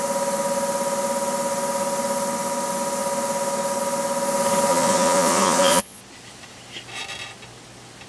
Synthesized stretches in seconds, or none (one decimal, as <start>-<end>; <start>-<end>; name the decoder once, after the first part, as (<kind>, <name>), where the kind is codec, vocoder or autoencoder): 4.7-6.0 (vocoder, Vocos)